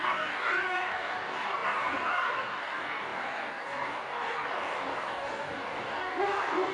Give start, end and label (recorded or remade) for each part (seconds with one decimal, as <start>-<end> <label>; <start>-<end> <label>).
0.0-6.7 remade